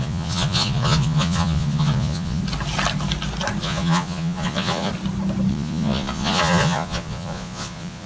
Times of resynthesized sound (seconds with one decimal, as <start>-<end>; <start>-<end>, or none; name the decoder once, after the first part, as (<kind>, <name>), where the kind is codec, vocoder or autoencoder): 0.0-2.4 (vocoder, Vocos); 3.6-4.9; 5.5-8.1